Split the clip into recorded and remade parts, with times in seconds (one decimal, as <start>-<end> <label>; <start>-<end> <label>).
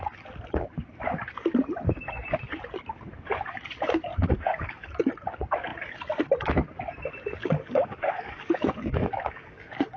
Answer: 0.0-4.1 recorded; 4.1-5.1 remade; 5.1-7.4 recorded; 7.4-10.0 remade